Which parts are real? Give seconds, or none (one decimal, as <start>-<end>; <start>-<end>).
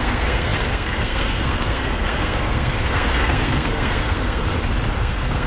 4.4-5.0